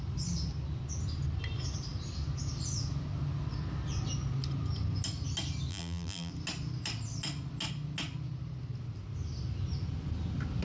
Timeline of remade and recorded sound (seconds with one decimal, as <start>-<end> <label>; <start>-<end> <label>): 0.0-5.7 recorded; 5.7-6.3 remade; 6.3-10.6 recorded